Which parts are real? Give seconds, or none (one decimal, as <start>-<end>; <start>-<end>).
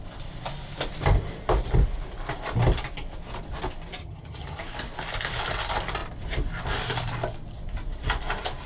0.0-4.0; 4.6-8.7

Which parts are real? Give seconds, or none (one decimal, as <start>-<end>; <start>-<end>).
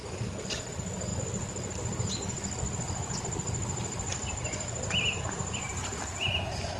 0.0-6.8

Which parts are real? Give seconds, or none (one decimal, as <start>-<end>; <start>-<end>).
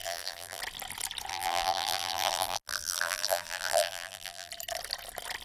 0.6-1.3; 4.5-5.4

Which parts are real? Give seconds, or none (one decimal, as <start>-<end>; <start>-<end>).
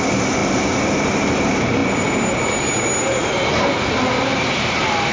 0.0-0.4; 1.4-5.1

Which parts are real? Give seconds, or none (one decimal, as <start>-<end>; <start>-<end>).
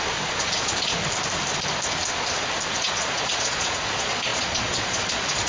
1.0-2.7